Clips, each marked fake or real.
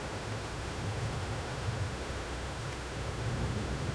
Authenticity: fake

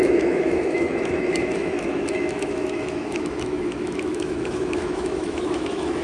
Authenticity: fake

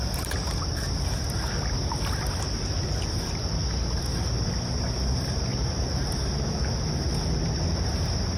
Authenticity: real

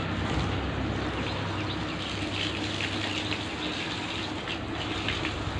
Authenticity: real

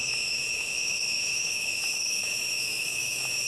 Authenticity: fake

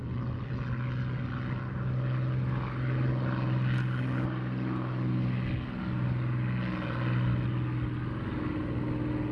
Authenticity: real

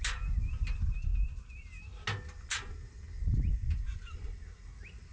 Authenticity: real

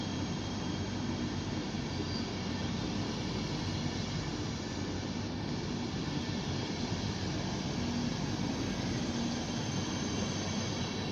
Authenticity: real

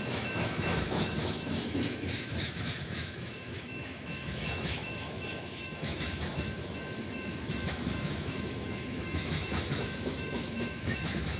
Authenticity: fake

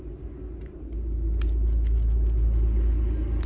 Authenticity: real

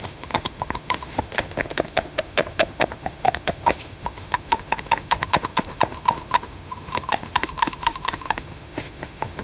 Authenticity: fake